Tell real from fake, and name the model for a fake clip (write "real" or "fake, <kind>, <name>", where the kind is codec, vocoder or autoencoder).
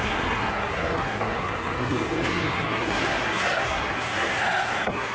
fake, codec, SNAC